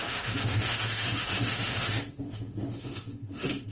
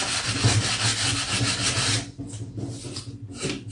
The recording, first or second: second